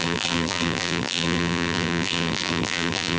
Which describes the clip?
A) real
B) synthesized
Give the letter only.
B